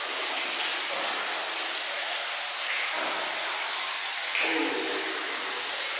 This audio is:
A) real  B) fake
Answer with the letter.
A